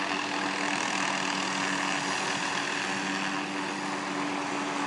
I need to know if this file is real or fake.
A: real